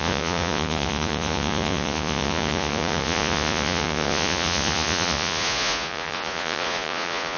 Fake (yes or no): yes